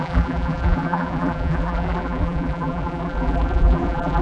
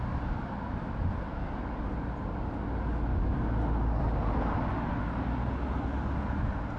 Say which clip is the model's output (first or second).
first